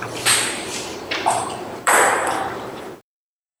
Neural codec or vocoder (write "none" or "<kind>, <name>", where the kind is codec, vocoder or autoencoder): vocoder, BigVGAN v2